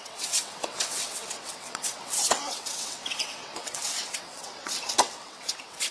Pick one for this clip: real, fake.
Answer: fake